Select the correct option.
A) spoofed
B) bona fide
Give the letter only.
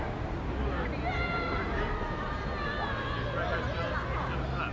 B